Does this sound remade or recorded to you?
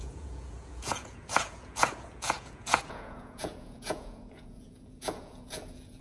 remade